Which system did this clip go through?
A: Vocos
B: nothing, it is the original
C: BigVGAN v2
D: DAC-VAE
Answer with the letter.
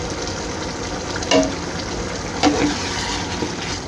B